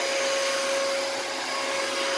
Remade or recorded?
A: recorded